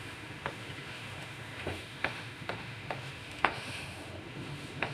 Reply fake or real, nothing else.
fake